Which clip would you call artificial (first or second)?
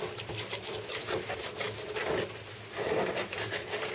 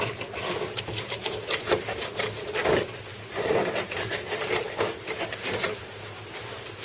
second